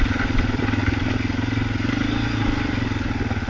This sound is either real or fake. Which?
real